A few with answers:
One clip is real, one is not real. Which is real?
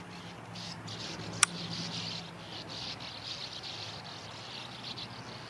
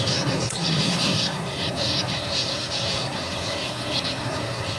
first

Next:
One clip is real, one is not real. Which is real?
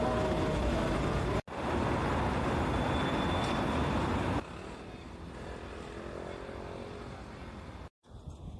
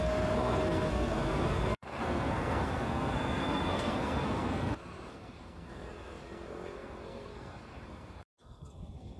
first